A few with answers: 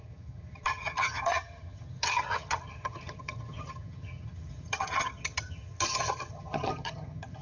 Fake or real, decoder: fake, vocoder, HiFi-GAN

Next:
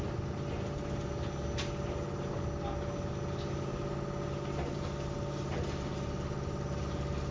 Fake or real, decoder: real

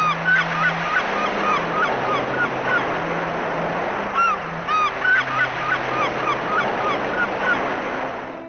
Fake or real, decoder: real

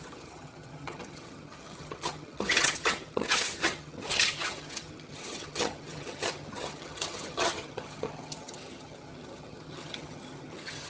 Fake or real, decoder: fake, vocoder, HiFi-GAN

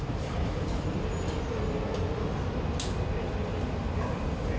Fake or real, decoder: real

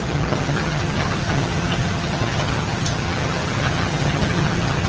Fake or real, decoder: fake, vocoder, HiFi-GAN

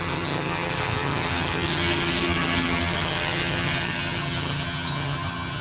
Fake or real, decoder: fake, vocoder, HiFi-GAN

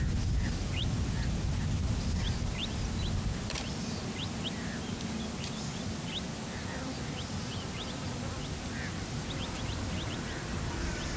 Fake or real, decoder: real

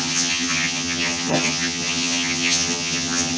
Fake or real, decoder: fake, vocoder, HiFi-GAN